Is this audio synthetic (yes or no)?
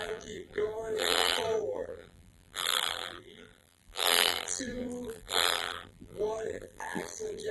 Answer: yes